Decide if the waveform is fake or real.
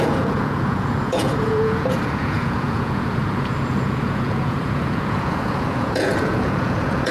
fake